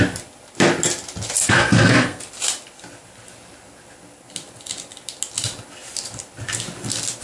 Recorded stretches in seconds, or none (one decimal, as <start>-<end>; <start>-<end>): 0.0-1.4; 2.2-7.2